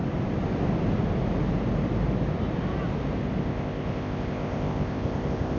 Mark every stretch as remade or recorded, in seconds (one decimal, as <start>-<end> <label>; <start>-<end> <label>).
0.0-3.4 recorded; 3.4-5.6 remade